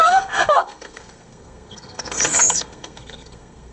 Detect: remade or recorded remade